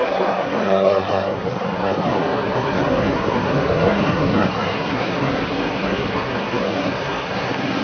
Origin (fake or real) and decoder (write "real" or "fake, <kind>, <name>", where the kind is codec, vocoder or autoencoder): fake, codec, SNAC